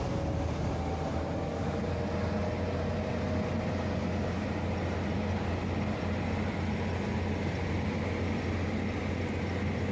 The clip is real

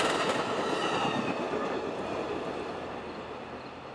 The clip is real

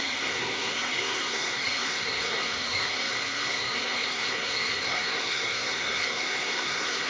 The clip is fake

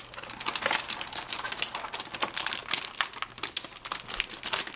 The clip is real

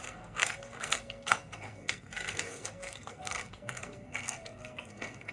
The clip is fake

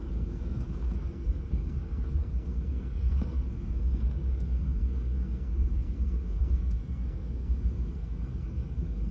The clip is fake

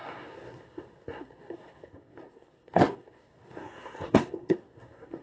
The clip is fake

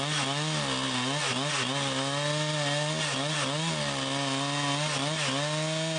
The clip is real